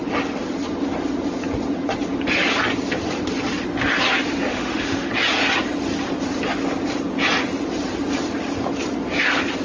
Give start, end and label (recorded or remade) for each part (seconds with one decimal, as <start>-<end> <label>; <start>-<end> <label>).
0.0-4.5 recorded; 4.5-5.1 remade; 5.1-9.6 recorded

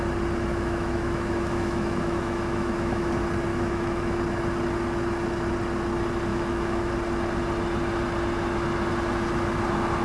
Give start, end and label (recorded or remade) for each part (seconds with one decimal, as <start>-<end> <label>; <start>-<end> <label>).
0.0-0.5 recorded; 0.5-3.1 remade; 3.1-3.5 recorded; 3.5-4.2 remade; 4.2-6.3 recorded; 6.3-6.9 remade; 6.9-10.0 recorded

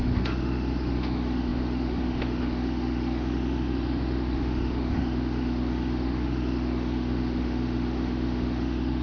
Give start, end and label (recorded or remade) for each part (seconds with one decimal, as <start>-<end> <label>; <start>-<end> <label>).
0.0-9.0 remade

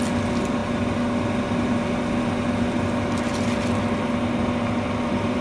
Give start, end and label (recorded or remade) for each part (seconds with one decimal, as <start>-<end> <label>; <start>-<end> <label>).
0.0-5.4 recorded